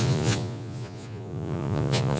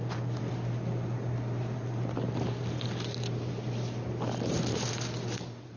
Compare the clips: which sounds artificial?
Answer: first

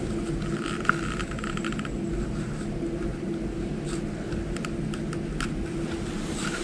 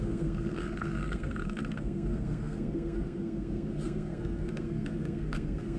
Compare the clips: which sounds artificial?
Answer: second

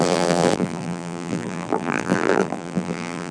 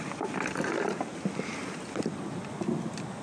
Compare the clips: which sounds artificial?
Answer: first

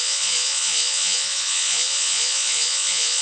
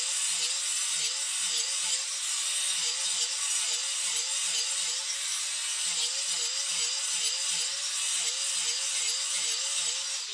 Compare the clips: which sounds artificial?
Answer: first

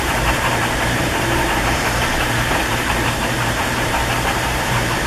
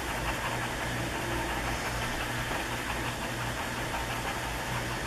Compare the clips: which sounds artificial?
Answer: first